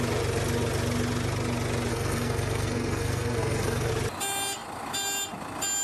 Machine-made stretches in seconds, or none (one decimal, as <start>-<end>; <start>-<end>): 1.9-3.9